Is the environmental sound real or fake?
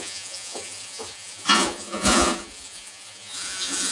fake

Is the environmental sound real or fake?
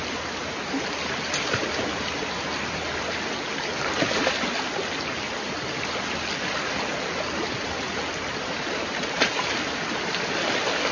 real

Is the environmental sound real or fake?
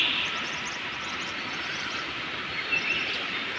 real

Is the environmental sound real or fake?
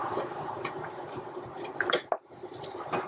real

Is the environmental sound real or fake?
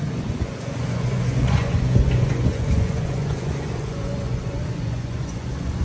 fake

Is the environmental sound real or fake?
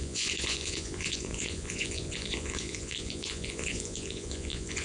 fake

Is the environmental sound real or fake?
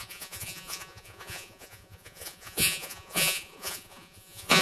fake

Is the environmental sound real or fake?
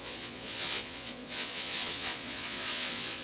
fake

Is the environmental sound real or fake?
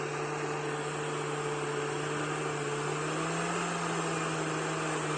real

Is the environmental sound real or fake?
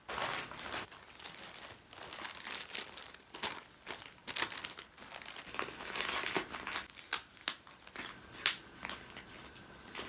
real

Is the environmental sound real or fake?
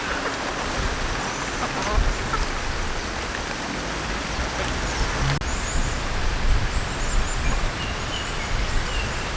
real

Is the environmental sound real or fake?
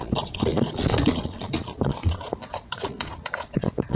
fake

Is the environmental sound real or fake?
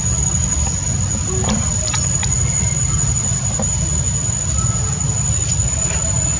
real